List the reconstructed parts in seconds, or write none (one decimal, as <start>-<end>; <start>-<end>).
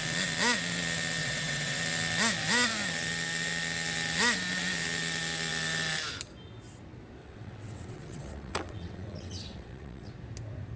1.2-1.8; 7.2-10.1